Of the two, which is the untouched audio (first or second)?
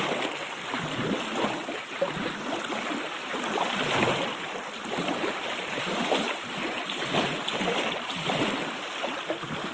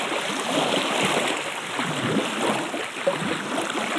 second